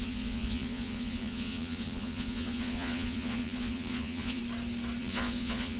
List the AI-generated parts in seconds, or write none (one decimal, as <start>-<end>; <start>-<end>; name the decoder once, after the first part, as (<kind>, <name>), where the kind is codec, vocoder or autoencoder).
0.0-4.4 (vocoder, Vocos); 5.0-5.8